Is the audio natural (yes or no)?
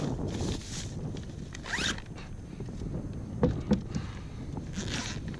yes